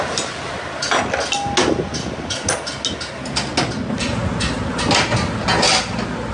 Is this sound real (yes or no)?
yes